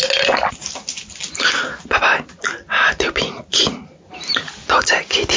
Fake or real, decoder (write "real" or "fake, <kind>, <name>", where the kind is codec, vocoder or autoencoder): real